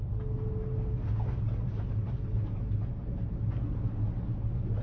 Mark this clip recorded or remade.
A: recorded